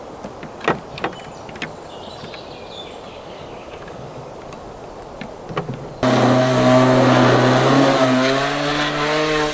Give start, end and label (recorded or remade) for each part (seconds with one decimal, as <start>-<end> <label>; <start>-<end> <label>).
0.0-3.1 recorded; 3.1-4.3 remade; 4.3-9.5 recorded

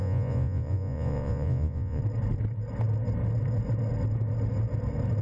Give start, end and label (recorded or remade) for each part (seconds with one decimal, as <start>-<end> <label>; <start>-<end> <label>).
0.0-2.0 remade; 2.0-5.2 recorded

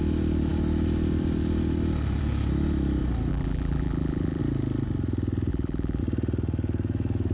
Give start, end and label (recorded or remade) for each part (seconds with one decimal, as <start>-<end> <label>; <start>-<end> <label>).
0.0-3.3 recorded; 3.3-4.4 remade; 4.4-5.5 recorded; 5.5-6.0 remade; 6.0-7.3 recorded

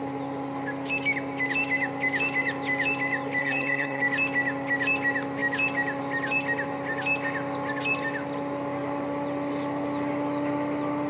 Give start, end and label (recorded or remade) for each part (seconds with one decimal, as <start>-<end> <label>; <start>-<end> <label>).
0.0-3.4 recorded; 3.4-4.0 remade; 4.0-11.1 recorded

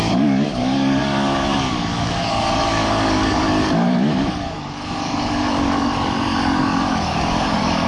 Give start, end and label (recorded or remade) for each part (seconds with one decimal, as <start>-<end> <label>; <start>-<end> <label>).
0.0-7.9 remade

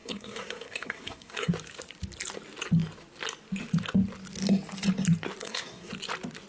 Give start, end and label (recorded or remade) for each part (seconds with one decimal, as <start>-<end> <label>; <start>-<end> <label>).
0.0-1.5 remade; 1.5-5.4 recorded; 5.4-5.9 remade; 5.9-6.5 recorded

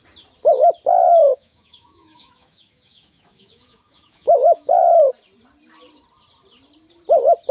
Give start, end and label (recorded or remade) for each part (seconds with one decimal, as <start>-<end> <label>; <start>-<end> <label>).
0.0-1.2 recorded; 1.2-4.8 remade; 4.8-7.5 recorded

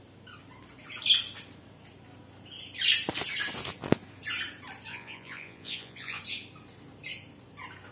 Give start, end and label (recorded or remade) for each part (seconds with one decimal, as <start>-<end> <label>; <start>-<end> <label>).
0.0-4.9 recorded; 4.9-6.2 remade; 6.2-7.9 recorded